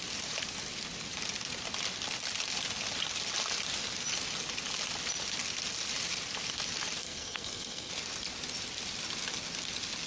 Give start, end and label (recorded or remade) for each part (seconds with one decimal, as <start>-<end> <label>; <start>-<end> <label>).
0.0-7.0 recorded; 7.0-7.9 remade; 7.9-10.1 recorded

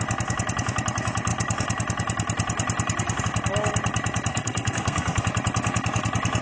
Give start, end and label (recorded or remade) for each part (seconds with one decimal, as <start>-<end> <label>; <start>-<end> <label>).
0.0-4.3 recorded; 4.3-5.2 remade; 5.2-6.4 recorded

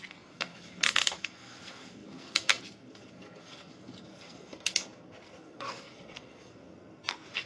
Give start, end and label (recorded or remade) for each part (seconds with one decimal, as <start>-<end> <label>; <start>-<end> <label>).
0.0-7.5 remade

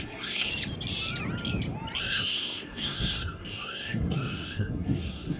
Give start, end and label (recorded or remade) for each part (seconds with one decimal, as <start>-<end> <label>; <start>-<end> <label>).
0.0-0.5 remade; 0.5-2.0 recorded; 2.0-5.4 remade

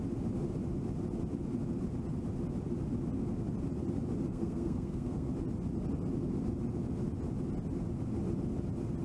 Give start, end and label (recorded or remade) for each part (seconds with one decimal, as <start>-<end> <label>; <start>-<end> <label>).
0.0-4.3 recorded; 4.3-5.3 remade; 5.3-9.0 recorded